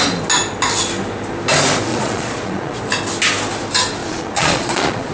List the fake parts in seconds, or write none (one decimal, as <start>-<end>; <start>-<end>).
1.9-2.8; 4.0-5.1